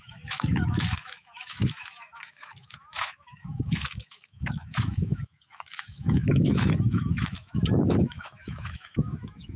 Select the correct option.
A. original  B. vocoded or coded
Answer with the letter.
B